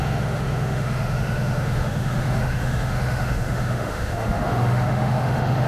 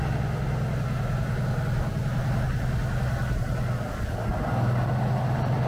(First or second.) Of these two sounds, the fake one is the first